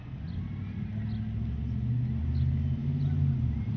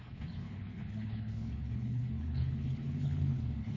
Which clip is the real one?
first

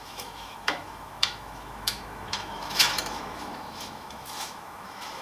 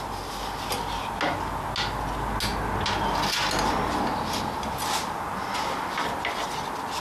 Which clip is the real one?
second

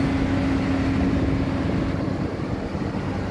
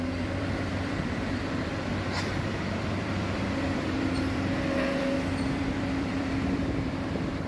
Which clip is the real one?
first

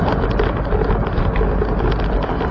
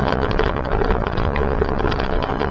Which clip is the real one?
first